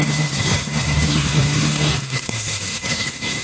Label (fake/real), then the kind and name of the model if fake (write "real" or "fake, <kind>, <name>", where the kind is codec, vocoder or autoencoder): fake, codec, SNAC